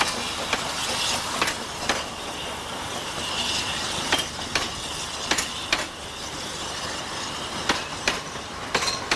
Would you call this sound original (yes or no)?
yes